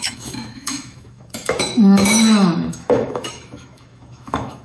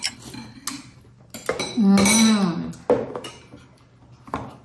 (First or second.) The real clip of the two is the second